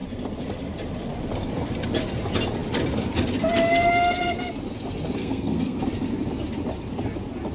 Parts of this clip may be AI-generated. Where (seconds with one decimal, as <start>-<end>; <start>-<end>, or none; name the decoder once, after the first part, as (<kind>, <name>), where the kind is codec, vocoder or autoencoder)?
5.2-5.8 (codec, SNAC)